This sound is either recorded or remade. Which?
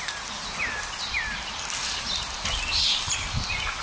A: recorded